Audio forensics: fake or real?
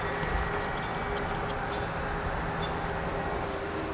real